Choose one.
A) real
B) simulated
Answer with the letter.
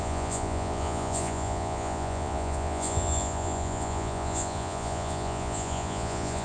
B